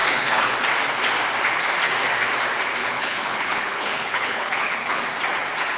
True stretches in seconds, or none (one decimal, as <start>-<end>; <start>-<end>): 0.5-2.8; 5.0-5.8